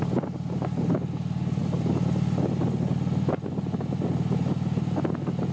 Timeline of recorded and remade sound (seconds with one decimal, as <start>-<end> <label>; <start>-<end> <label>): 0.0-5.5 recorded